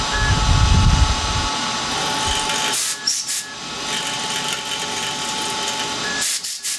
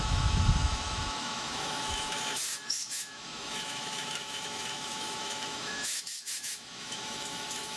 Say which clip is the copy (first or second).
second